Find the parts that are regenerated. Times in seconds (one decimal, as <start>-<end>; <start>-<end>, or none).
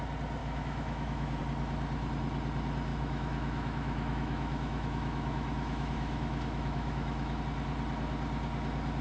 0.4-1.4; 2.9-7.4